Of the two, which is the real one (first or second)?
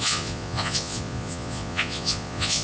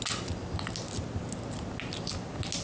second